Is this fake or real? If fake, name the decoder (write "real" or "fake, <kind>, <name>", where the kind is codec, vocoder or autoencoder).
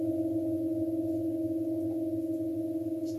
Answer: real